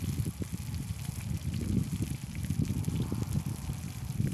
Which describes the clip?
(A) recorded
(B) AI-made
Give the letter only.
A